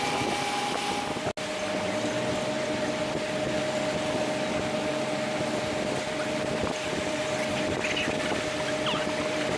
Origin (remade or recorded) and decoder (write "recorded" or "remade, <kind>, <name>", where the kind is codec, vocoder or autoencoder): recorded